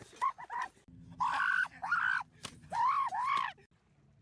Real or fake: real